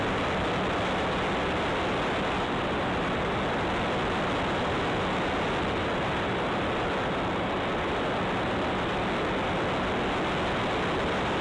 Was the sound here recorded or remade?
recorded